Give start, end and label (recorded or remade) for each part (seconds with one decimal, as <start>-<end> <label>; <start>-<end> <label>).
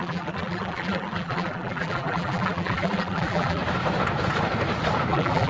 0.0-3.6 remade; 3.6-5.1 recorded; 5.1-5.5 remade